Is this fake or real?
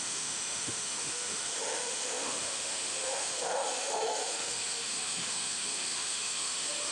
fake